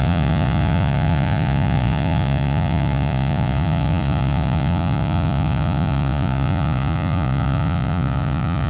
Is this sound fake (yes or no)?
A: yes